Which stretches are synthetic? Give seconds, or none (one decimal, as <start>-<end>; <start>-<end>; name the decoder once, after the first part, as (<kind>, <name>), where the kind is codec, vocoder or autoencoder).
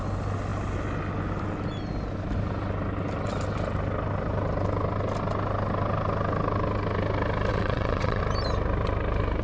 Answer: 7.5-8.2 (vocoder, WaveNeXt)